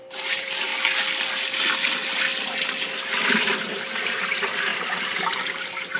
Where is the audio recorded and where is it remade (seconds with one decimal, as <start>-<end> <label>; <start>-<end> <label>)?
0.0-0.7 remade; 0.7-1.7 recorded; 1.7-2.3 remade; 2.3-3.2 recorded; 3.2-6.0 remade